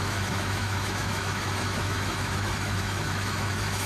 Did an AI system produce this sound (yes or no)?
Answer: yes